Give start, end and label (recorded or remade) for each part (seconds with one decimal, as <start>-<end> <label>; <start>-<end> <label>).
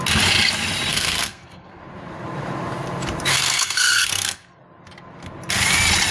0.0-0.9 recorded; 0.9-1.8 remade; 1.8-3.3 recorded; 3.3-4.6 remade; 4.6-6.1 recorded